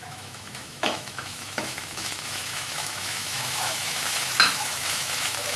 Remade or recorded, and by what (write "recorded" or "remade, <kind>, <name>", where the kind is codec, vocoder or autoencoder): remade, autoencoder, DAC-VAE